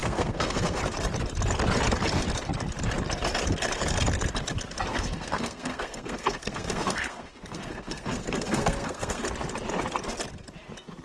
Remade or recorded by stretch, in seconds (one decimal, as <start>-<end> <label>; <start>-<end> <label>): 0.0-0.8 remade; 0.8-4.9 recorded; 4.9-9.2 remade; 9.2-11.0 recorded